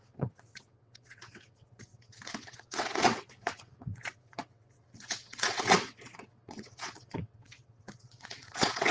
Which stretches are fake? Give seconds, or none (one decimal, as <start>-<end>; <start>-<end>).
0.0-8.9